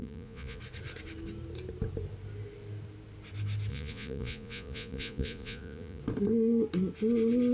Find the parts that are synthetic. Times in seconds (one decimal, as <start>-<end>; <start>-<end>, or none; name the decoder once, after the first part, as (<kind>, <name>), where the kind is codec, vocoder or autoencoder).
0.0-0.6 (vocoder, Vocos); 3.7-6.0